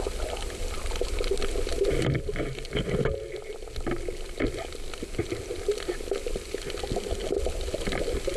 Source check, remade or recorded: recorded